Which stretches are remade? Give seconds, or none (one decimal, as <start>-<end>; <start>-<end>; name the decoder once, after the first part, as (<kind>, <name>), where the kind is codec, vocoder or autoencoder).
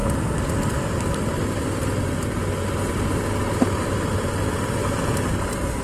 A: none